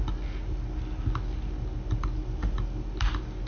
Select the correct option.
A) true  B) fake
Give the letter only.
A